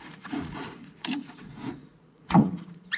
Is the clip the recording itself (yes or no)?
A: no